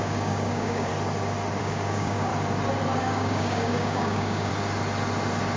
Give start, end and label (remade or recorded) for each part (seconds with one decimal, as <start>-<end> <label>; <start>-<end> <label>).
0.0-0.9 remade; 0.9-1.6 recorded; 1.6-2.3 remade; 2.3-3.0 recorded; 3.0-4.5 remade; 4.5-5.6 recorded